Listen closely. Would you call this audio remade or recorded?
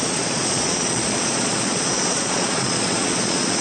remade